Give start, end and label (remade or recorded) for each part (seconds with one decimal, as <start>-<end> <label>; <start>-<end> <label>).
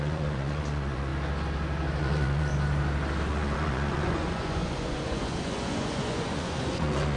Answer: 0.0-1.1 remade; 1.1-2.0 recorded; 2.0-2.5 remade; 2.5-3.3 recorded; 3.3-7.2 remade